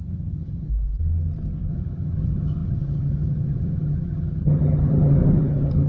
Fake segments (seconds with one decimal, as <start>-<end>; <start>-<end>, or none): 0.0-0.7; 1.7-5.9